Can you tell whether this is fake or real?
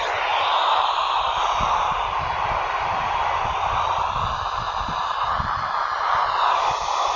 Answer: real